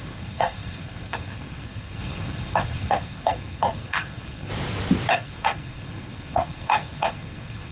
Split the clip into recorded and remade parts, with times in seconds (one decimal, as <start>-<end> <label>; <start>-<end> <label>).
0.0-4.5 remade; 4.5-5.1 recorded; 5.1-7.7 remade